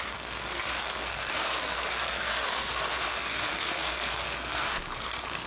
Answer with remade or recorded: remade